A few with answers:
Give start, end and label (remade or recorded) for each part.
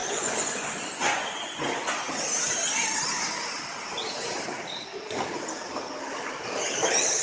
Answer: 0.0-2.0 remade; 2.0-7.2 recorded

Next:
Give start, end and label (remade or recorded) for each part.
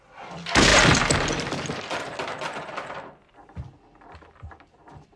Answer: 0.0-5.2 recorded